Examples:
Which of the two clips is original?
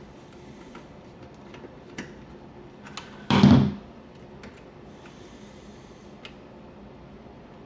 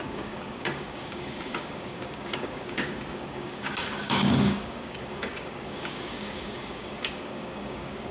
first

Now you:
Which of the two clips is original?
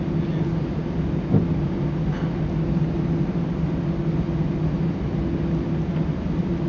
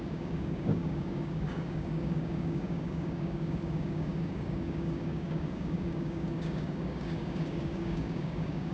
first